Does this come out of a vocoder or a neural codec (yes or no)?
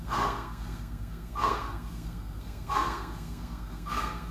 yes